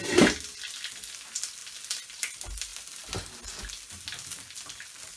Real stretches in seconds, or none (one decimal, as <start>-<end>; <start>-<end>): 0.0-5.2